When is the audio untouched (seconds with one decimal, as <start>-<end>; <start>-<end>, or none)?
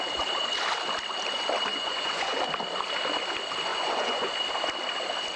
0.0-1.7; 2.4-3.7; 4.3-5.4